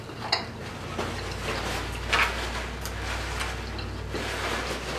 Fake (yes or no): no